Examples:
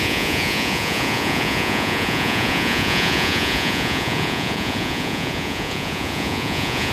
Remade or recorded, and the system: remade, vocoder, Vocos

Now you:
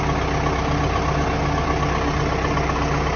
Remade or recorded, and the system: recorded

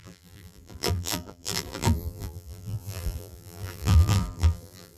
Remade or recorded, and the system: remade, vocoder, BigVGAN v2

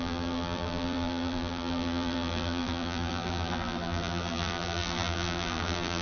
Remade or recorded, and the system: remade, vocoder, BigVGAN v2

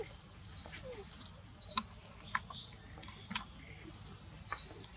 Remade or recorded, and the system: recorded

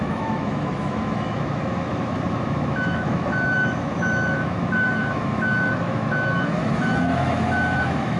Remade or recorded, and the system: remade, autoencoder, DAC-VAE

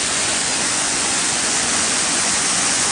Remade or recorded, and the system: remade, vocoder, Vocos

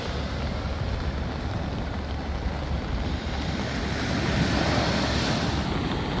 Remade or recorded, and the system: recorded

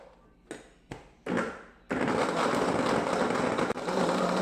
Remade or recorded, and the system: recorded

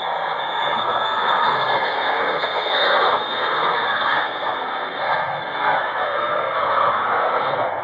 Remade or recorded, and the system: remade, codec, SNAC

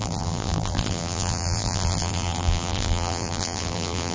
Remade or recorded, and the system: remade, vocoder, BigVGAN v2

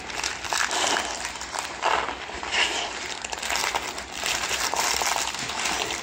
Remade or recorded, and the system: remade, vocoder, BigVGAN v2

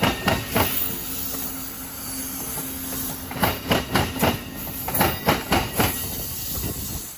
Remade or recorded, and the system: recorded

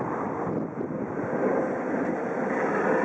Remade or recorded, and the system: recorded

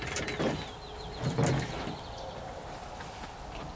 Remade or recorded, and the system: recorded